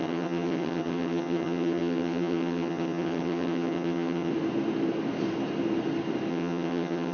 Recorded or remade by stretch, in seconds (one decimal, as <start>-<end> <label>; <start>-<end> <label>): 0.0-4.3 remade; 4.3-6.3 recorded; 6.3-7.1 remade